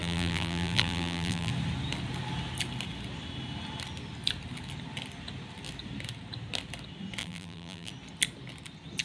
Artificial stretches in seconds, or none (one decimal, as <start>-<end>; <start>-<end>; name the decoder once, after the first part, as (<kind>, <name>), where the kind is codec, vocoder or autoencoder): 0.0-1.5 (vocoder, BigVGAN v2); 7.2-7.9